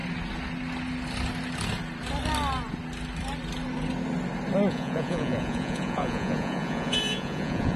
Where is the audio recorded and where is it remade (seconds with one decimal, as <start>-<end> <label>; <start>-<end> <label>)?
0.0-4.7 recorded; 4.7-7.8 remade